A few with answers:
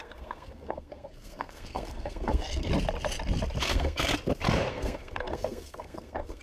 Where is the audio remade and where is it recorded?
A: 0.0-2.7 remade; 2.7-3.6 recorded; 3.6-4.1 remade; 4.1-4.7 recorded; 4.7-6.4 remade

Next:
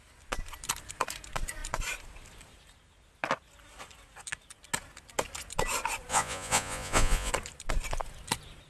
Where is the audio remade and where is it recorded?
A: 0.0-6.1 recorded; 6.1-7.3 remade; 7.3-8.7 recorded

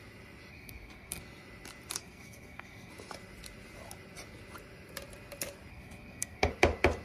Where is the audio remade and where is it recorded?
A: 0.0-0.5 recorded; 0.5-1.2 remade; 1.2-2.0 recorded; 2.0-2.9 remade; 2.9-5.7 recorded; 5.7-6.5 remade; 6.5-7.0 recorded

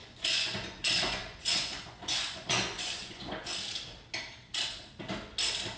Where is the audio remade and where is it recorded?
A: 0.0-3.5 remade; 3.5-5.8 recorded

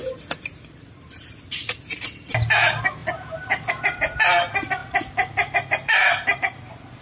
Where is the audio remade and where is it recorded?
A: 0.0-7.0 recorded

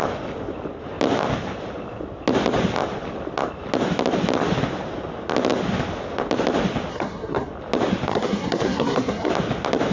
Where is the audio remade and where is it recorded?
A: 0.0-6.9 recorded; 6.9-7.5 remade; 7.5-8.1 recorded; 8.1-9.3 remade; 9.3-9.9 recorded

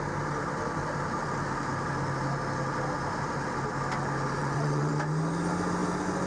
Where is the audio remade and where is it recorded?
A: 0.0-4.4 recorded; 4.4-4.9 remade; 4.9-6.3 recorded